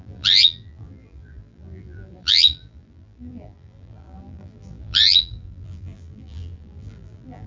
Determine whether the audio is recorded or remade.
remade